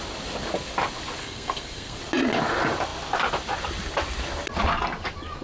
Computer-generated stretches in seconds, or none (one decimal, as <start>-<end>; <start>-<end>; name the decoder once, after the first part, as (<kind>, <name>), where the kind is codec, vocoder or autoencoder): 1.2-2.0 (codec, SNAC)